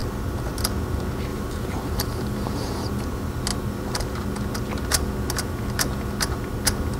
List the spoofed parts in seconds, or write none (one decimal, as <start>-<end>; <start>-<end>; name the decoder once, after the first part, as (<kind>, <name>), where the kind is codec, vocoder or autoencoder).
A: 1.3-3.0 (vocoder, BigVGAN v2)